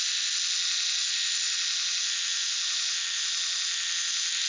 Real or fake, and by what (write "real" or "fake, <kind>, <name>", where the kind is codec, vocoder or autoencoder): real